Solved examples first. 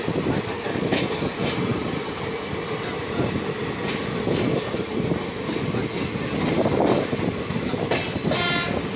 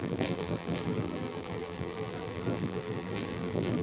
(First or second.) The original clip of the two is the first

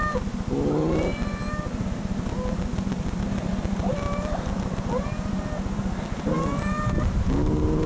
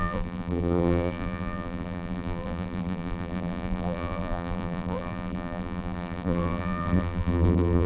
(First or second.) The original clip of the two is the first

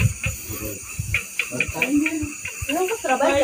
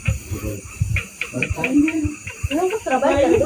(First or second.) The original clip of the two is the first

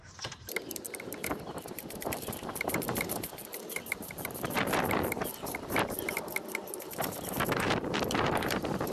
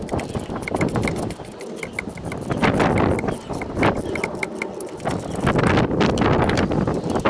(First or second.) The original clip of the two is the second